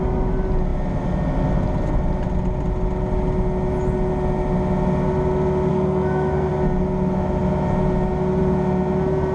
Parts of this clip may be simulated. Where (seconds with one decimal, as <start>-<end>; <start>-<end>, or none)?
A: 5.7-6.5